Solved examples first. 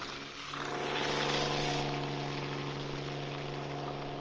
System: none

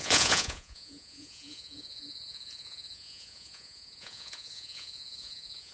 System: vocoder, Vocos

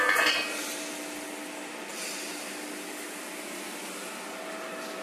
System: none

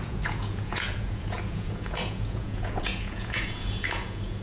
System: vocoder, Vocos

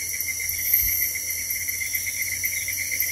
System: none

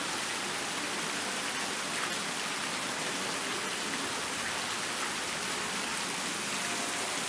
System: none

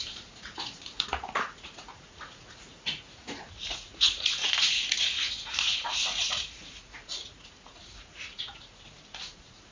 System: vocoder, Vocos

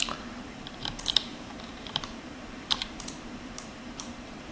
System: vocoder, BigVGAN v2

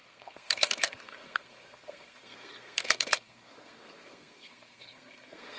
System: codec, SNAC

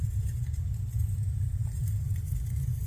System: vocoder, BigVGAN v2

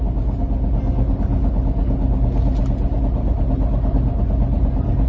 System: none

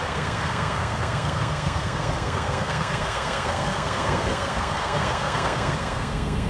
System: codec, SNAC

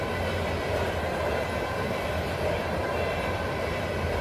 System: none